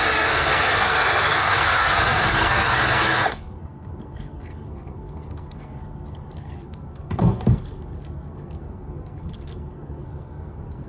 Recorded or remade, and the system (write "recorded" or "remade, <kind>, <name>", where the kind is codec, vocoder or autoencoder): remade, codec, SNAC